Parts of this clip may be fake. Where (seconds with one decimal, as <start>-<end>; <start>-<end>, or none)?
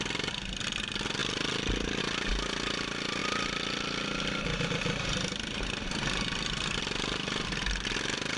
none